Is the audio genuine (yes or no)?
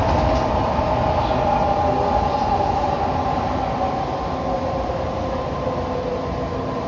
yes